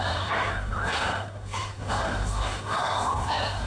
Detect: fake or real fake